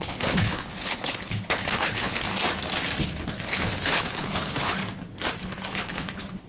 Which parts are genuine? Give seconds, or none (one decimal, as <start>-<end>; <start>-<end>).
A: 2.3-3.0; 4.8-5.4